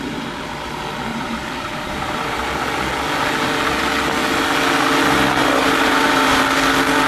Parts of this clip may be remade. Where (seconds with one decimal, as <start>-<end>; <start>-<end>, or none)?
1.1-2.5; 5.4-6.4